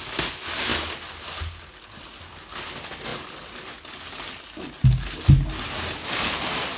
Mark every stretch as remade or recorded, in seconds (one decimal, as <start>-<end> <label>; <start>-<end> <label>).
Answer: 0.0-6.8 recorded